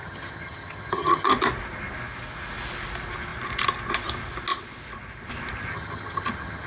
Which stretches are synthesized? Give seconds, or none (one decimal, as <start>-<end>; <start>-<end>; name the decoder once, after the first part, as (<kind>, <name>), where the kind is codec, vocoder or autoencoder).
0.0-1.3 (vocoder, HiFi-GAN); 5.7-6.7